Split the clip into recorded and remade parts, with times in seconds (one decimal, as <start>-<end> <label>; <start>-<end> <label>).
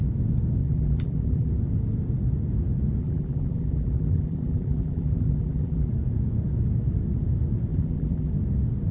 0.0-0.6 recorded; 0.6-1.5 remade; 1.5-3.0 recorded; 3.0-5.9 remade; 5.9-7.7 recorded; 7.7-8.3 remade; 8.3-8.9 recorded